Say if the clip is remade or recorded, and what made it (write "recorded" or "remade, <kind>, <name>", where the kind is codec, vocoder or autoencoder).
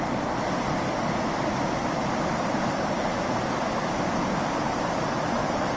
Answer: recorded